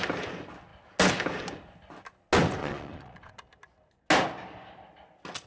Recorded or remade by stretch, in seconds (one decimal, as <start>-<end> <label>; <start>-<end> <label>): 0.0-2.6 recorded; 2.6-3.3 remade; 3.3-5.5 recorded